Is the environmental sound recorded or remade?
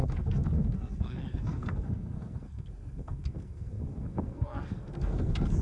remade